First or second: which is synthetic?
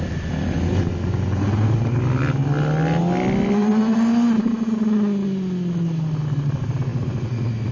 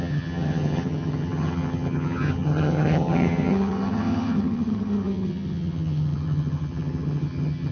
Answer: second